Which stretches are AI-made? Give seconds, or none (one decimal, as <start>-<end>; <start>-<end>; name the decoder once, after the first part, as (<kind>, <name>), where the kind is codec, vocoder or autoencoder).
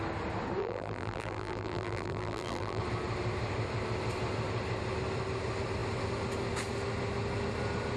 0.6-2.8 (vocoder, BigVGAN v2)